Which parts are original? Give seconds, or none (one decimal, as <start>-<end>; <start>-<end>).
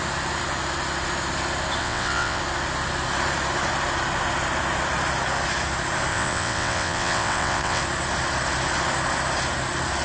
0.0-1.8; 2.4-6.1; 7.8-10.0